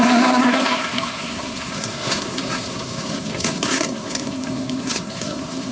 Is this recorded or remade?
remade